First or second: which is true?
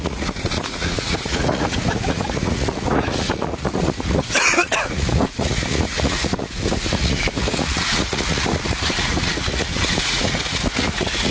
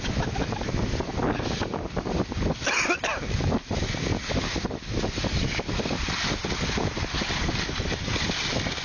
second